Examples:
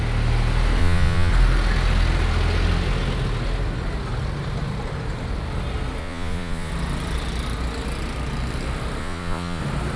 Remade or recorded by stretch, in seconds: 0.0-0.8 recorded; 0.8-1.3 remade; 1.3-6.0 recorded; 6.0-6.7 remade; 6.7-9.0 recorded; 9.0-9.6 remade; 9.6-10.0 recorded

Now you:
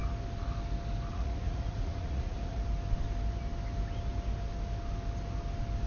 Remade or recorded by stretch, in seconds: 0.0-1.1 recorded; 1.1-2.6 remade; 2.6-5.9 recorded

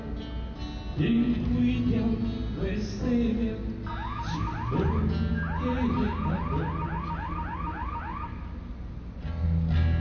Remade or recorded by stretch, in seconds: 0.0-10.0 recorded

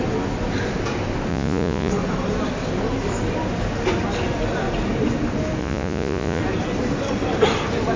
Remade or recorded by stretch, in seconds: 0.0-1.3 recorded; 1.3-1.9 remade; 1.9-5.6 recorded; 5.6-6.4 remade; 6.4-8.0 recorded

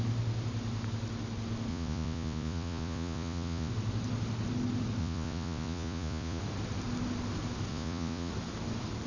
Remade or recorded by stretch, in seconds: 0.0-1.7 recorded; 1.7-3.7 remade; 3.7-5.0 recorded; 5.0-6.4 remade; 6.4-7.7 recorded; 7.7-8.3 remade; 8.3-9.1 recorded

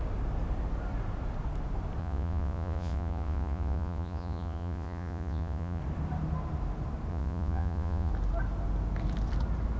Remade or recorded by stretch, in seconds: 0.0-2.0 recorded; 2.0-5.8 remade; 5.8-7.1 recorded; 7.1-8.1 remade; 8.1-9.8 recorded

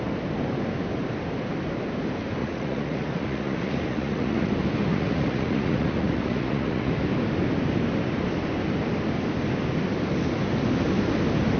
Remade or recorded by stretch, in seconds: 0.0-2.4 recorded; 2.4-4.5 remade; 4.5-4.9 recorded; 4.9-6.9 remade; 6.9-11.6 recorded

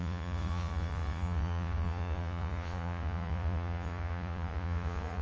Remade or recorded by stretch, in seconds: 0.0-5.2 remade